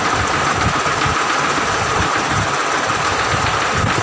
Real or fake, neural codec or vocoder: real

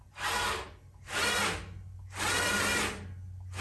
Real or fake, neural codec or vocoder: real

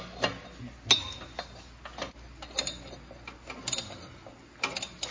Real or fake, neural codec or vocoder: real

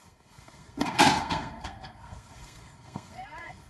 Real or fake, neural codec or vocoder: fake, codec, SNAC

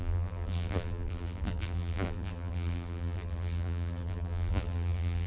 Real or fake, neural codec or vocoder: fake, vocoder, BigVGAN v2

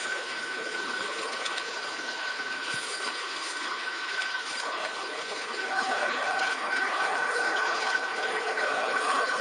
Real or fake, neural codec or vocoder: fake, codec, HILCodec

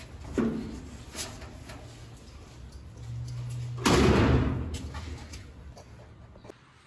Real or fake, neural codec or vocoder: real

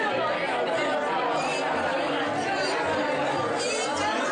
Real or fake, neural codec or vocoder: real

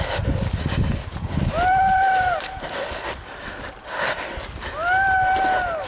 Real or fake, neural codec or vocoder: real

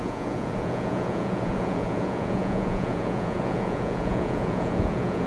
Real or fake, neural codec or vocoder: fake, vocoder, Vocos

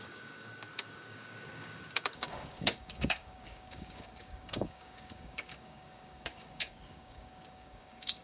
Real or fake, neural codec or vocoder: fake, codec, DAC